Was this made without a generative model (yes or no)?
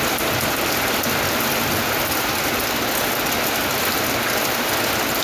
yes